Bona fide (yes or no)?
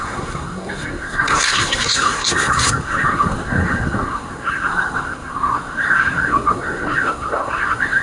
no